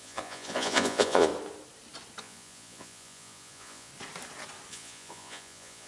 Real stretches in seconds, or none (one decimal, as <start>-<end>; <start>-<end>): 1.3-2.2; 3.9-4.7